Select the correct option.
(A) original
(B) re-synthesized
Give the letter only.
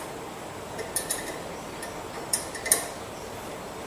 A